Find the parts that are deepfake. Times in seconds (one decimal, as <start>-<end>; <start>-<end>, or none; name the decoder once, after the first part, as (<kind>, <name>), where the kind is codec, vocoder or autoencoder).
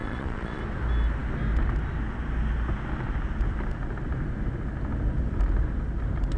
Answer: 0.0-0.6 (vocoder, Vocos)